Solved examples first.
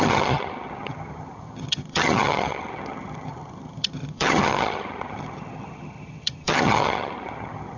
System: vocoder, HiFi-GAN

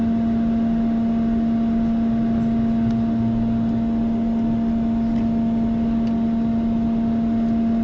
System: none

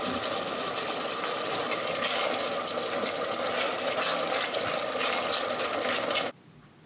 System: none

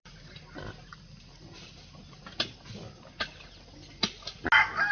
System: none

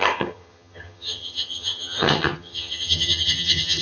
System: vocoder, HiFi-GAN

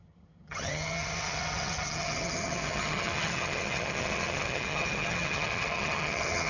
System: vocoder, HiFi-GAN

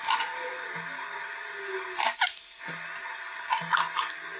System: none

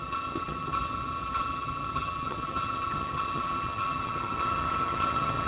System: vocoder, HiFi-GAN